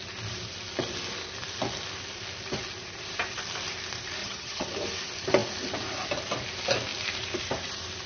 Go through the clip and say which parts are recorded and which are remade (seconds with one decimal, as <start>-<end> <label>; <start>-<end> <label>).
0.0-4.2 recorded; 4.2-4.7 remade; 4.7-8.1 recorded